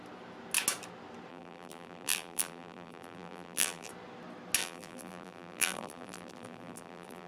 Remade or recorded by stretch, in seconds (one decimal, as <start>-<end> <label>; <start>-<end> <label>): 0.0-1.3 recorded; 1.3-3.9 remade; 3.9-4.6 recorded; 4.6-7.3 remade